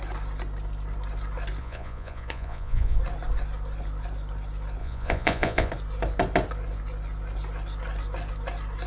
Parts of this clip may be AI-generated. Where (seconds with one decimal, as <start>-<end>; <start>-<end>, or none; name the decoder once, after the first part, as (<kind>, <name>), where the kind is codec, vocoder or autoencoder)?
1.6-3.0 (vocoder, Vocos); 4.8-5.7